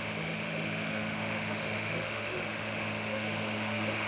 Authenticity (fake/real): fake